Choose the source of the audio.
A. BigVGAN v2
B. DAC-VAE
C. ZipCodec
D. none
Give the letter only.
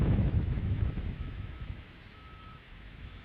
B